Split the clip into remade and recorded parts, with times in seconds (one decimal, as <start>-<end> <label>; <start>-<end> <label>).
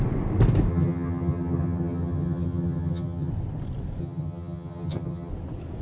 0.0-0.7 recorded; 0.7-3.3 remade; 3.3-4.0 recorded; 4.0-5.3 remade; 5.3-5.8 recorded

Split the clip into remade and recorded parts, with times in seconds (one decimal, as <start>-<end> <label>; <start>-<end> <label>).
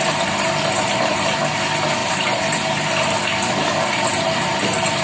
0.0-2.0 recorded; 2.0-3.2 remade; 3.2-5.0 recorded